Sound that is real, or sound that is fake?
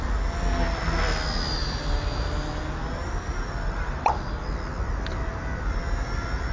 real